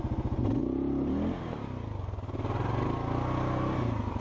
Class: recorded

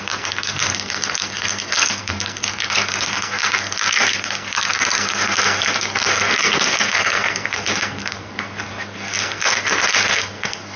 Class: remade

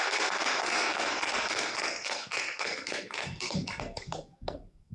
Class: remade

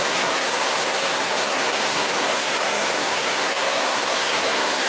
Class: remade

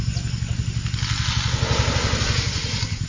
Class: recorded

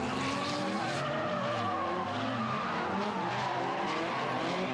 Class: recorded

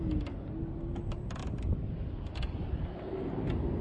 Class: recorded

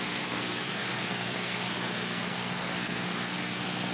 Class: remade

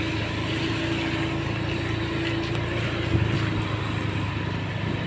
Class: recorded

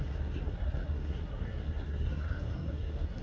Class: remade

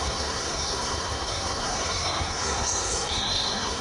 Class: remade